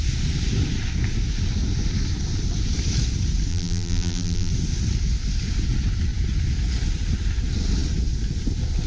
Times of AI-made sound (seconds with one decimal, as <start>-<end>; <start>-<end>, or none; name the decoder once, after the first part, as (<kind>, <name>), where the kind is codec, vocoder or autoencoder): 3.5-4.5 (vocoder, BigVGAN v2)